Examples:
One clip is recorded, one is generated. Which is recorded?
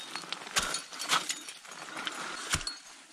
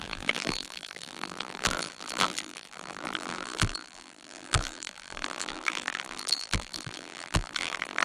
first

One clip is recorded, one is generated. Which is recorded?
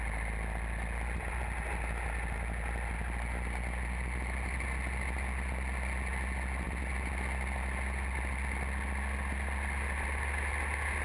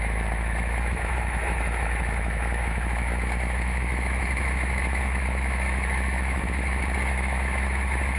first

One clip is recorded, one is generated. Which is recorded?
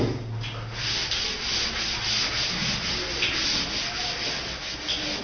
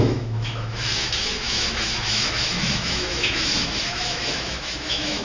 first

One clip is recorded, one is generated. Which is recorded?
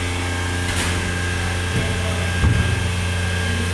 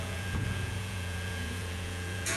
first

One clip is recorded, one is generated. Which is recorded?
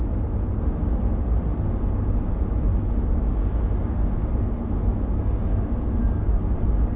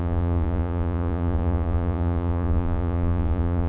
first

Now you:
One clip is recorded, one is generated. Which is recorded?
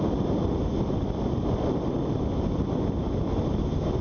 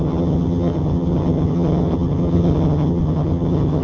first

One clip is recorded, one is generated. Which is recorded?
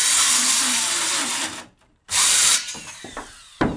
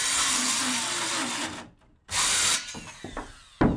second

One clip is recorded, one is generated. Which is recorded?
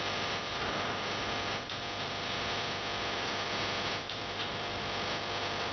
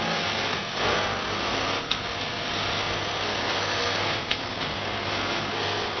first